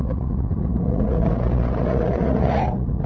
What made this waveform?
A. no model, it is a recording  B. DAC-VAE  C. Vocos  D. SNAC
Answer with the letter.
C